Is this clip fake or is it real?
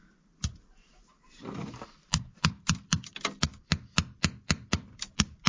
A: real